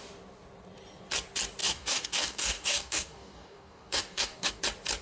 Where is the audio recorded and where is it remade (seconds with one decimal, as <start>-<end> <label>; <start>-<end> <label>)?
0.0-1.6 recorded; 1.6-4.6 remade; 4.6-5.0 recorded